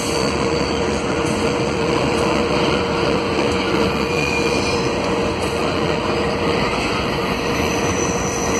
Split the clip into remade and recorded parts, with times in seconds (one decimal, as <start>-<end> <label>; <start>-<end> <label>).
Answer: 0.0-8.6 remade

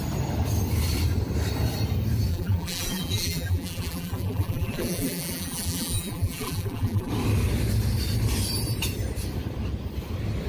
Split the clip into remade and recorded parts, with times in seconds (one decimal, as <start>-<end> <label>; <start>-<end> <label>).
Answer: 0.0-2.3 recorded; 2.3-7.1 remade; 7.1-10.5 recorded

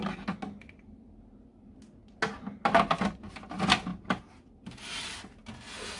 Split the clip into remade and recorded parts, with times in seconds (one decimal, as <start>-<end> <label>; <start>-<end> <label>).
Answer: 0.0-6.0 recorded

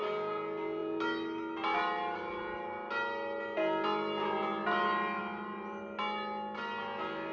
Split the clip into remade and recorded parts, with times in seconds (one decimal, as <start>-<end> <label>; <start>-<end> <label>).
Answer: 0.0-7.3 recorded

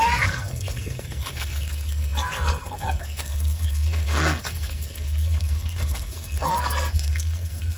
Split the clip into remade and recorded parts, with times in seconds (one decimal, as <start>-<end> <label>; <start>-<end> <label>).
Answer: 0.0-7.8 remade

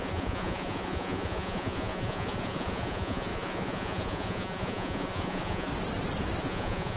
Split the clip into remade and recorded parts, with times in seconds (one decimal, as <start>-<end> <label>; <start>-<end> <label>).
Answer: 0.0-5.7 remade; 5.7-6.4 recorded; 6.4-7.0 remade

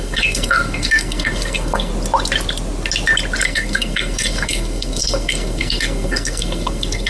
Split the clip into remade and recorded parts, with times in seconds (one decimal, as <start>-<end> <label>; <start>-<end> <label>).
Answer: 0.0-1.9 remade; 1.9-3.4 recorded; 3.4-7.1 remade